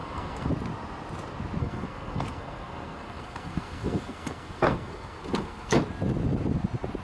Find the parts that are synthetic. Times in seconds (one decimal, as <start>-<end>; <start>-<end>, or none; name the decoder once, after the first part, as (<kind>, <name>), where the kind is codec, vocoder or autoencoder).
0.0-0.5 (codec, SNAC); 1.6-5.8